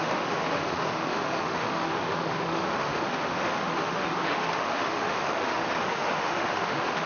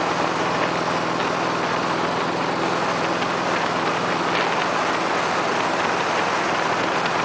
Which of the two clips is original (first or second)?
second